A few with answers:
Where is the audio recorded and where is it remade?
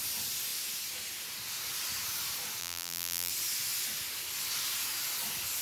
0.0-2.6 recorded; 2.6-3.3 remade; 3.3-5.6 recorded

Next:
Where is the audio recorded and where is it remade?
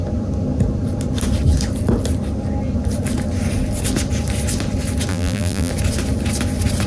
0.0-5.1 recorded; 5.1-5.7 remade; 5.7-6.9 recorded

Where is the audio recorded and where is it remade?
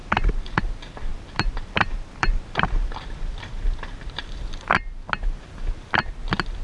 0.0-0.6 remade; 0.6-1.1 recorded; 1.1-4.4 remade; 4.4-6.6 recorded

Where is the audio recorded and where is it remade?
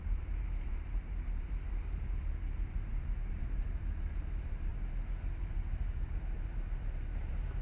0.0-4.7 remade; 4.7-5.4 recorded; 5.4-7.6 remade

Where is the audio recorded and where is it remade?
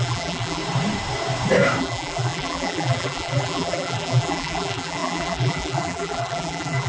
0.0-0.6 remade; 0.6-1.8 recorded; 1.8-6.9 remade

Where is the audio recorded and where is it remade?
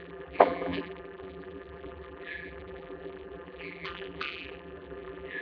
0.0-5.4 remade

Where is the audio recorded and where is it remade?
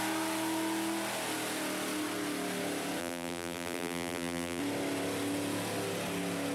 0.0-3.0 recorded; 3.0-4.6 remade; 4.6-6.5 recorded